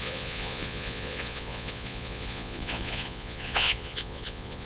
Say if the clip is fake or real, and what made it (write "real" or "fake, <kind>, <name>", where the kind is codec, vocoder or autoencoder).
fake, vocoder, Vocos